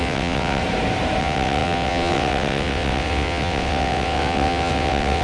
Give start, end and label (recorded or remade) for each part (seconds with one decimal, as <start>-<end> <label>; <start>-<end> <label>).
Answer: 0.0-0.6 remade; 0.6-1.2 recorded; 1.2-5.2 remade